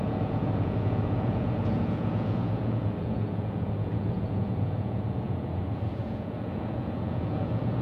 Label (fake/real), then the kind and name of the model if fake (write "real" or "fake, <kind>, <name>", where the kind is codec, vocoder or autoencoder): fake, vocoder, Vocos